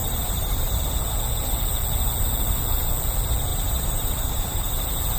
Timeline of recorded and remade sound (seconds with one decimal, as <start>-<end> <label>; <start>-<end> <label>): 0.0-0.7 remade; 0.7-3.5 recorded; 3.5-4.7 remade; 4.7-5.2 recorded